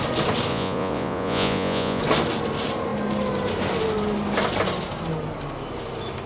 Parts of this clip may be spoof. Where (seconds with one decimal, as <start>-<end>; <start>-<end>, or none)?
0.5-2.0